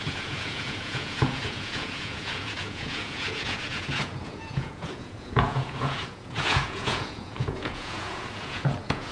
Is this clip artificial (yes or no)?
yes